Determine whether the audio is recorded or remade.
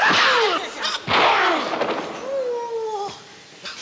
recorded